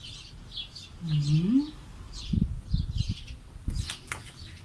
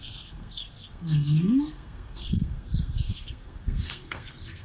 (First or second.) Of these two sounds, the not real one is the second